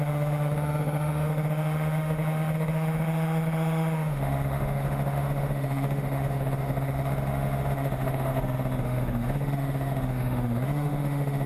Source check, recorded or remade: remade